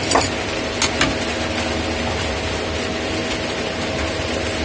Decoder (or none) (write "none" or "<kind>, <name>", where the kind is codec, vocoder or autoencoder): none